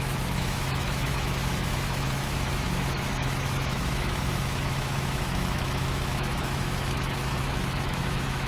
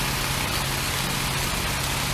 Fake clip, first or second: first